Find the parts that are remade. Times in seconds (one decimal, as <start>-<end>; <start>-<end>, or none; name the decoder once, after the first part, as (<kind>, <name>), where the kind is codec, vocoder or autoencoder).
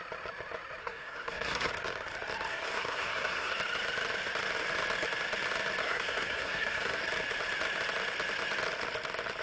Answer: 0.8-1.7 (codec, SNAC); 2.5-3.5; 5.8-7.0